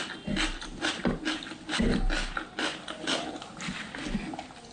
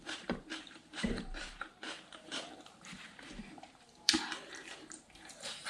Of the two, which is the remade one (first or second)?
second